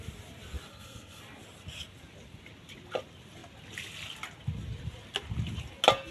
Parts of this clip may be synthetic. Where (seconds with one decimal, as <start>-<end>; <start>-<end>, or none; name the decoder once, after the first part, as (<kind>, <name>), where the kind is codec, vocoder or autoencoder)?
0.7-1.2 (codec, SNAC)